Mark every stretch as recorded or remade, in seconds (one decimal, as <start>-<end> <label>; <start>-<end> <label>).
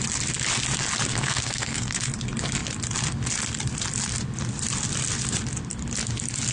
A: 0.0-1.1 recorded; 1.1-2.1 remade; 2.1-6.5 recorded